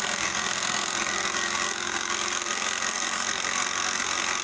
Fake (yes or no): yes